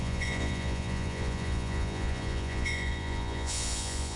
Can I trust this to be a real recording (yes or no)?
no